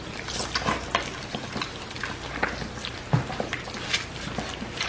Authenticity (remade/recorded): recorded